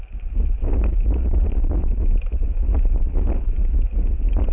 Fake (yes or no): no